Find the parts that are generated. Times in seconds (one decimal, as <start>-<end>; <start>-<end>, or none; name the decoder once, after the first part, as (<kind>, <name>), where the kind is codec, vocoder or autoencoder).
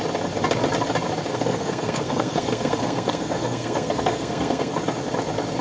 1.3-4.7 (codec, SNAC)